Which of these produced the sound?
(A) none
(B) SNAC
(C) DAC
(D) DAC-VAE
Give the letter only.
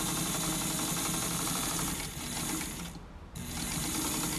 A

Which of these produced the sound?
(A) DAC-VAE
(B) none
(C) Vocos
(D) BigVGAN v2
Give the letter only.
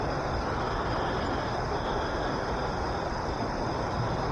B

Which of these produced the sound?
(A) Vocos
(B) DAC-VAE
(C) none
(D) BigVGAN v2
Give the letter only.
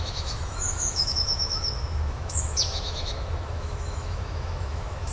B